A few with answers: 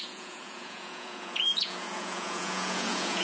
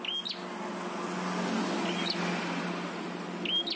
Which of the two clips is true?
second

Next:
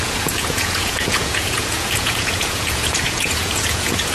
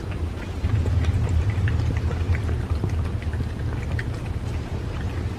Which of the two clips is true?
second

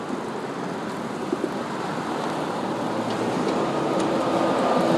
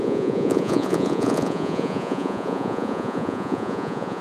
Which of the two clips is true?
first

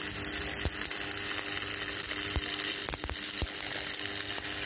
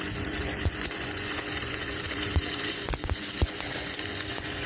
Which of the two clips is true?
first